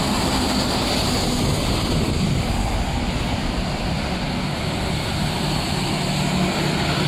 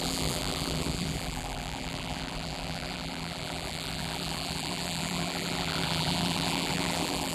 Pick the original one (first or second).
first